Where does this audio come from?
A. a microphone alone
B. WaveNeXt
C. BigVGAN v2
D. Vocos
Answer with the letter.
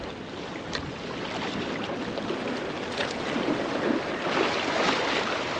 A